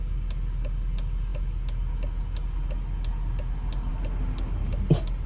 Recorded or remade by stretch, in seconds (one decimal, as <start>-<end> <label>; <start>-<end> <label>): 0.0-5.3 recorded